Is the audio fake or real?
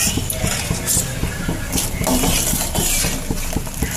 real